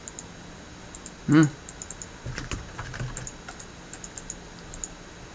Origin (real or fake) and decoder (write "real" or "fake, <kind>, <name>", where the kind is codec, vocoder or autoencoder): real